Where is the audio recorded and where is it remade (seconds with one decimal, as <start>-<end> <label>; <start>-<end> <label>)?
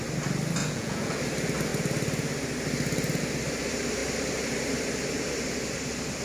0.0-0.6 recorded; 0.6-1.2 remade; 1.2-6.2 recorded